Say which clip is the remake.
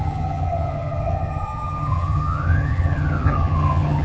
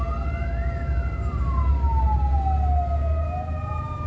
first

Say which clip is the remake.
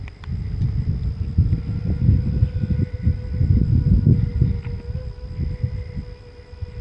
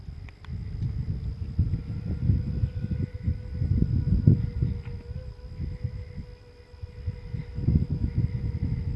first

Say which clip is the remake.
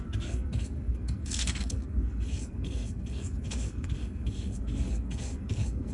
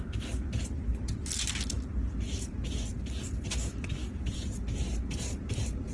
first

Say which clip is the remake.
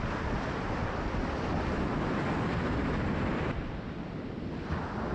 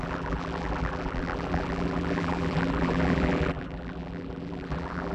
second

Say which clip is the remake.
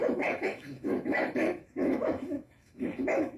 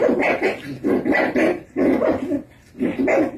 first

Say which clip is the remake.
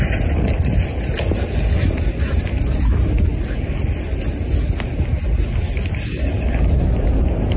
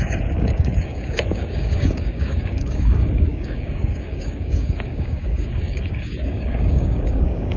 second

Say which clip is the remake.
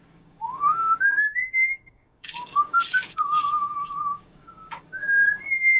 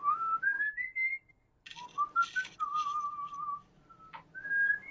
first